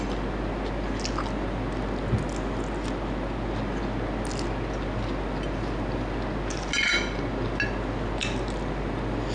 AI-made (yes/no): no